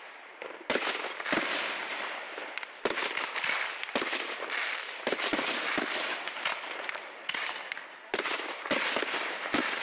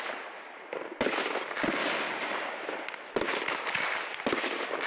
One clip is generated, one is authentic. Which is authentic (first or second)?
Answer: second